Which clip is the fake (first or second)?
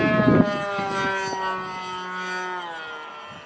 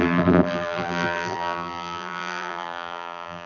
second